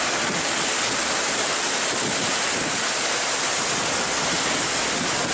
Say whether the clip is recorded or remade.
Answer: recorded